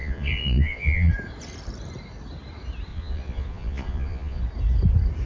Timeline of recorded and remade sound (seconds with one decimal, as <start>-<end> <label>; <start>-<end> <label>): 0.0-1.1 remade; 1.1-2.9 recorded; 2.9-4.4 remade; 4.4-5.3 recorded